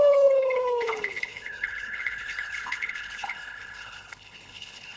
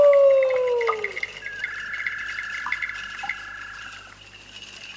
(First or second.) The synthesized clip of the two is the first